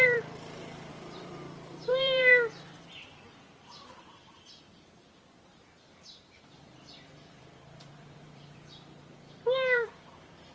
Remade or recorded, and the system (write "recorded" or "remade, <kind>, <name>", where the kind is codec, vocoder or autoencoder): remade, vocoder, BigVGAN v2